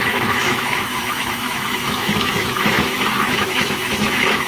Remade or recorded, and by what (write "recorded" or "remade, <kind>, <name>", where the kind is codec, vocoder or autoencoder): remade, autoencoder, DAC-VAE